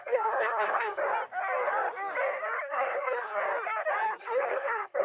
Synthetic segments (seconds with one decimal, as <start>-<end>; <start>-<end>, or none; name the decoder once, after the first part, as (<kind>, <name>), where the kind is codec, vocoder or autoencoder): 0.0-1.0 (codec, SNAC); 2.7-3.4; 4.2-5.0